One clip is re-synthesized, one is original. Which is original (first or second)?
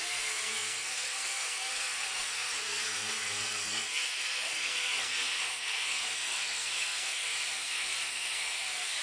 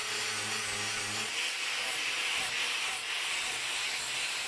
second